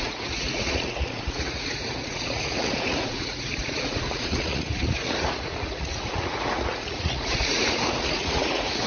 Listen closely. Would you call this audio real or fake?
fake